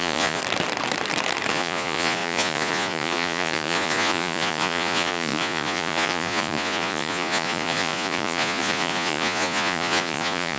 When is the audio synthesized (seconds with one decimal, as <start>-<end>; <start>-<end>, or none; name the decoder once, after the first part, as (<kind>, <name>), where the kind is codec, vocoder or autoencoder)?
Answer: 0.0-0.4 (vocoder, Vocos); 1.5-10.6